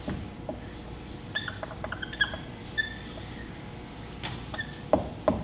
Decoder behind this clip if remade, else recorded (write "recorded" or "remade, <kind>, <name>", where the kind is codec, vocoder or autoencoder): recorded